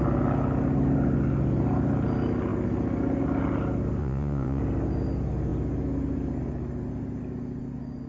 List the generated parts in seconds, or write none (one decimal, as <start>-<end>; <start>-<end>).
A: 4.0-4.6